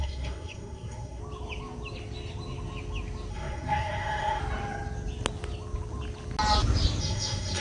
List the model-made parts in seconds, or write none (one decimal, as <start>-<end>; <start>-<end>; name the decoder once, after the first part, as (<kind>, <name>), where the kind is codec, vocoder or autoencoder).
0.0-1.2 (codec, SNAC); 3.3-4.4; 7.0-7.6